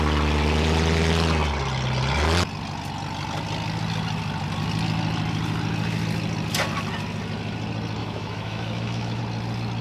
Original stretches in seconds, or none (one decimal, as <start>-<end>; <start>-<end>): 0.0-8.0; 9.2-9.8